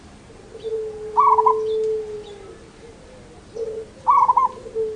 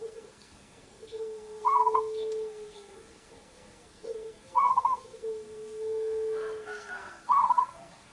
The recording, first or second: first